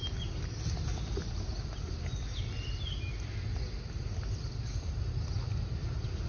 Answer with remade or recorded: recorded